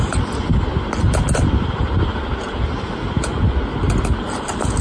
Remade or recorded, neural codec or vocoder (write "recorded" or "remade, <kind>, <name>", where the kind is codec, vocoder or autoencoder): recorded